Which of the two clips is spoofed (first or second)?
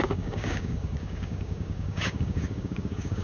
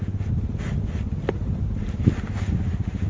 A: first